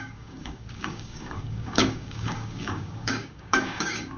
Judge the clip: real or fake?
fake